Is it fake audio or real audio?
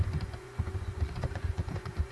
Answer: fake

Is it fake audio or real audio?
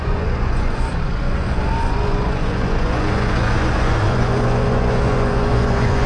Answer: fake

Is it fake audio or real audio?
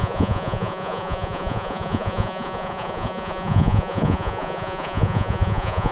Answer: fake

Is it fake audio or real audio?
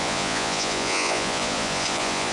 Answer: fake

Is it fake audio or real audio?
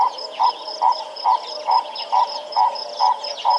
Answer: fake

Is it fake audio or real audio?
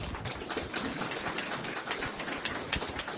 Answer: real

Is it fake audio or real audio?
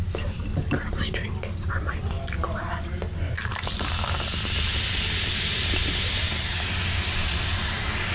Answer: real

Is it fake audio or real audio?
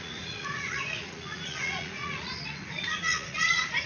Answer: fake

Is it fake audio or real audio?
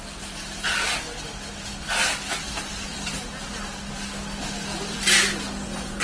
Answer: real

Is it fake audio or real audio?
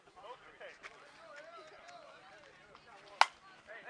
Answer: real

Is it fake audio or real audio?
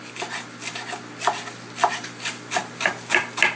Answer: real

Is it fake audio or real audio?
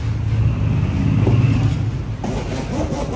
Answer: real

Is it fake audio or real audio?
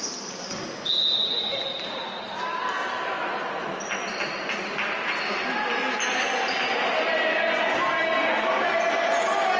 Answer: real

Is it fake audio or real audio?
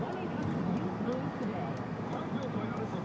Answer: real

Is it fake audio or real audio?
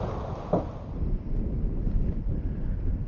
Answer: real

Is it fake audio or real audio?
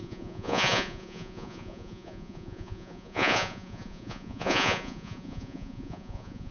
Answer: fake